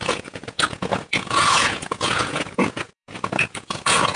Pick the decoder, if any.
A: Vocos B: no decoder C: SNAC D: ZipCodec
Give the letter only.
A